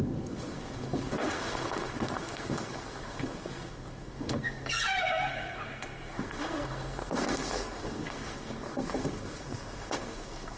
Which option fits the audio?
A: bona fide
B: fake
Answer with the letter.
B